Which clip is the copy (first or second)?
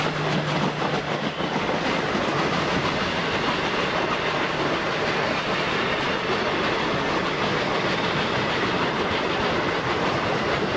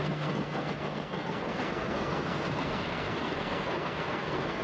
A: second